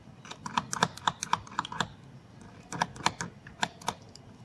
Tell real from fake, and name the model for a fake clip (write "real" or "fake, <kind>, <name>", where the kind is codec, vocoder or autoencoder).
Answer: real